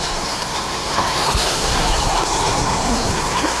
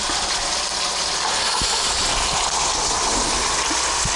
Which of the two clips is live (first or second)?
second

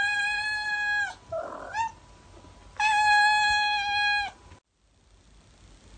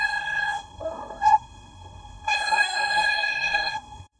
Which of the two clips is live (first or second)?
first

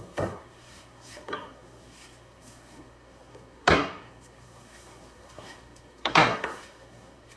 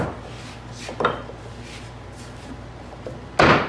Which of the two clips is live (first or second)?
second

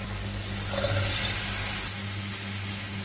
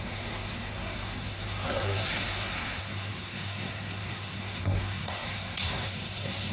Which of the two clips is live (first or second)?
first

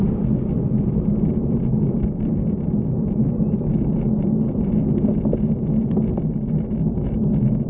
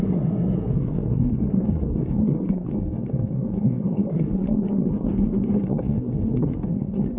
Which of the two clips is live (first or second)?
first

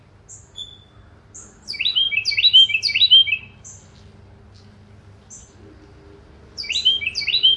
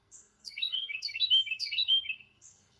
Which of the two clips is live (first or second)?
first